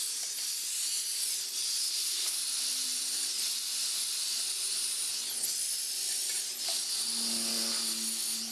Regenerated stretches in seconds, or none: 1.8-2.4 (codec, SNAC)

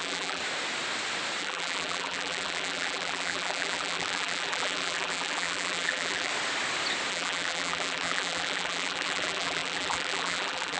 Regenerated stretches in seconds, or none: 0.0-0.4 (vocoder, BigVGAN v2); 1.4-6.3; 7.1-10.8